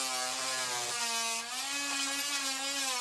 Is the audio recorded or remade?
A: recorded